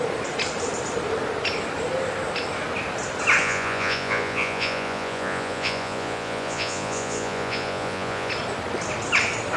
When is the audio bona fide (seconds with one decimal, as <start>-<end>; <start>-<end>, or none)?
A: 0.0-3.4; 8.3-9.6